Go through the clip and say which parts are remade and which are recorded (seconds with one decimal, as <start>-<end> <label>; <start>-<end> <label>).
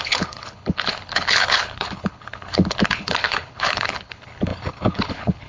0.0-5.5 remade